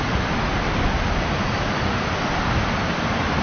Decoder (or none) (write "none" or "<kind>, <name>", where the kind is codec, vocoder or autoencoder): none